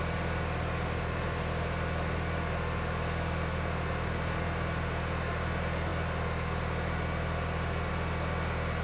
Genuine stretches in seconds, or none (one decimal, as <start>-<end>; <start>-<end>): 0.0-8.8